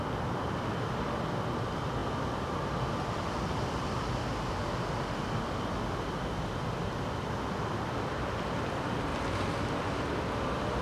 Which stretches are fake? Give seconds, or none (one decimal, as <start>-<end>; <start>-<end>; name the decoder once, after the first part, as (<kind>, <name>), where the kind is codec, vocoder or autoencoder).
none